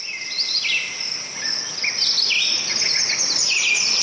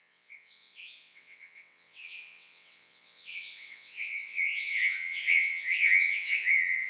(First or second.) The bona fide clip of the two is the first